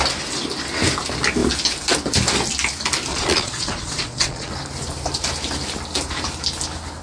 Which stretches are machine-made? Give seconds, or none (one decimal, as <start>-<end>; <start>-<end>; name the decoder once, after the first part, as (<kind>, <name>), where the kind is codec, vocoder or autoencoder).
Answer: 3.1-4.5 (vocoder, Vocos)